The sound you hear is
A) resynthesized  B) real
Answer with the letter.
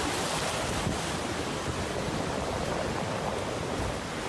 B